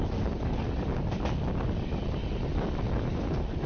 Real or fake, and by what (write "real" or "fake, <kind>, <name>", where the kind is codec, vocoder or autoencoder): real